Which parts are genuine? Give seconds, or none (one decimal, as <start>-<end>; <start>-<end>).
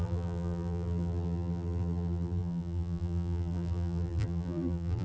none